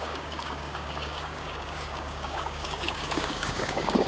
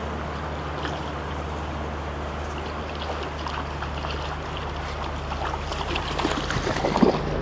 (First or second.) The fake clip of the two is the first